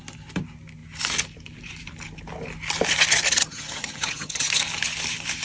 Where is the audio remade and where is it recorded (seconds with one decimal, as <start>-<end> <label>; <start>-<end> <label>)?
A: 0.0-3.4 recorded; 3.4-4.5 remade; 4.5-5.4 recorded